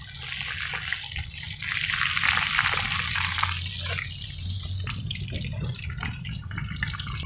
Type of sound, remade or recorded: recorded